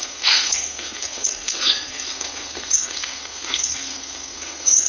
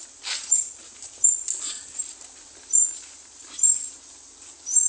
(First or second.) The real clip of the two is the second